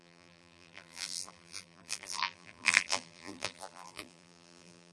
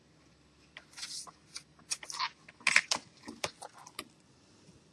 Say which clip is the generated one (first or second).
first